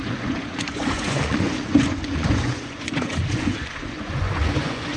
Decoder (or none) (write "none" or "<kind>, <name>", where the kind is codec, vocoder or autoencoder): vocoder, Vocos